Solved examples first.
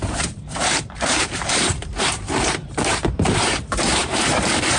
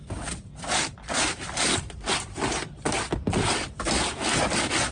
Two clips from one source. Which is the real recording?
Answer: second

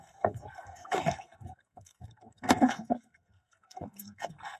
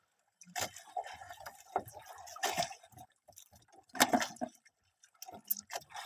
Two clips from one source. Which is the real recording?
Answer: second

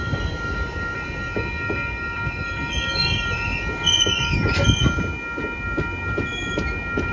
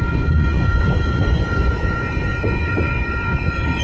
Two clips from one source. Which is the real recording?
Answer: first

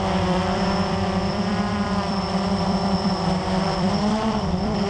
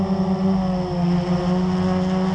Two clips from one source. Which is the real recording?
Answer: second